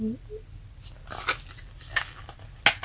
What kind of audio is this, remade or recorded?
recorded